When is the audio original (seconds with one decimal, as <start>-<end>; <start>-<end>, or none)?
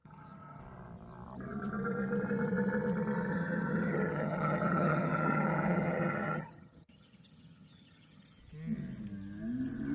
0.6-3.3; 8.4-9.9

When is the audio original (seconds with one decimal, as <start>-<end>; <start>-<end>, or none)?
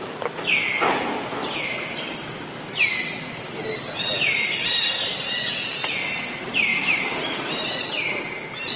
0.0-6.7; 7.7-8.8